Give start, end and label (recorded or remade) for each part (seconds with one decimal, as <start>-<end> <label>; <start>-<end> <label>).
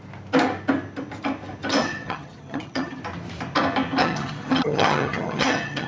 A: 0.0-1.8 recorded; 1.8-3.0 remade; 3.0-4.0 recorded; 4.0-5.9 remade